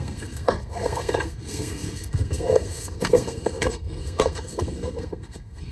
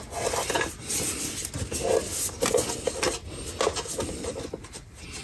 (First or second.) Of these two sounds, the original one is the second